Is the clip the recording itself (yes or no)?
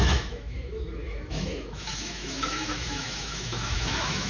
no